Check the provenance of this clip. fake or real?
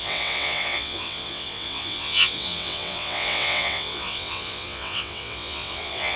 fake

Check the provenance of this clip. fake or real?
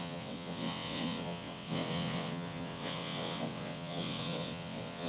fake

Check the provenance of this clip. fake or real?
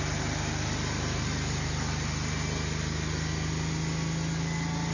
real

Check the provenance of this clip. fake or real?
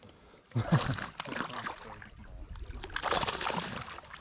real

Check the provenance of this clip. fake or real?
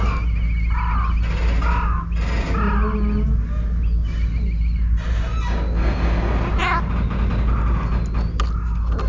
real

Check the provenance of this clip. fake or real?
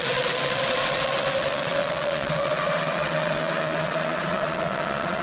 fake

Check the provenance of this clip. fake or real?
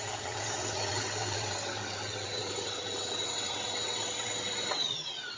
fake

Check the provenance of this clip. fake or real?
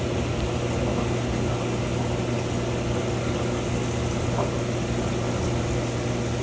real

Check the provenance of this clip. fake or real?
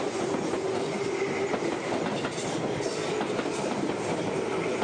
real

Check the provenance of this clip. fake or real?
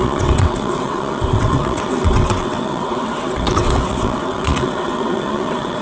fake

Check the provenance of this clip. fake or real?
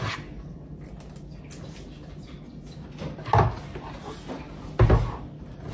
real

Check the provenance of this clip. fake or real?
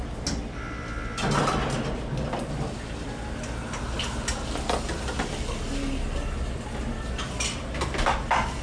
real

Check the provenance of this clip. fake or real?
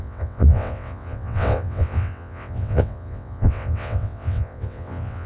fake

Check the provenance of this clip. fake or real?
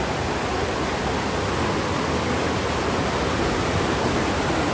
real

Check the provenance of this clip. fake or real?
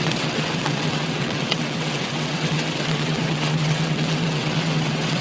fake